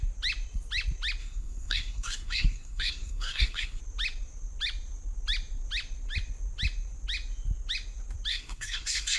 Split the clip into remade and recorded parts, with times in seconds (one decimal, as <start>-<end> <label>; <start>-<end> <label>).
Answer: 0.0-1.2 recorded; 1.2-3.8 remade; 3.8-8.3 recorded; 8.3-9.2 remade